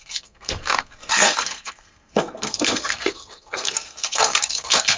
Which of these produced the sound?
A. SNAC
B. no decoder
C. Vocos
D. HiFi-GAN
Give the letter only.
A